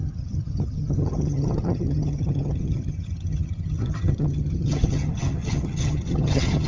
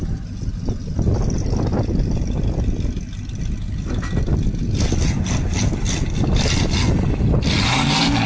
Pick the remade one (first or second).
first